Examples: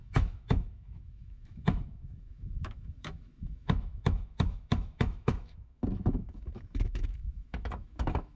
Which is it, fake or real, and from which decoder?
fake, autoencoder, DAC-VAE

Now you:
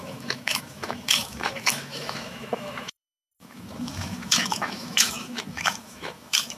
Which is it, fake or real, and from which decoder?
fake, autoencoder, DAC-VAE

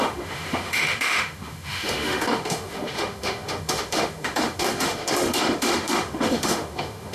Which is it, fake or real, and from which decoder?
fake, autoencoder, DAC-VAE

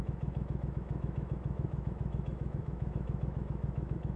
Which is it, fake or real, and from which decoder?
fake, autoencoder, DAC-VAE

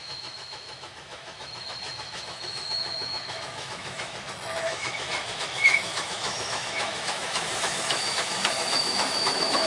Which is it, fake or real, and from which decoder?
fake, autoencoder, DAC-VAE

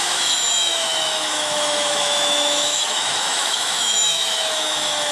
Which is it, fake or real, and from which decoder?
fake, autoencoder, DAC-VAE